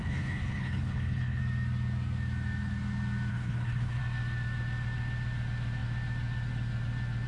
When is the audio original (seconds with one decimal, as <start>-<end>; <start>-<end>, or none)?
1.4-3.3; 4.0-7.3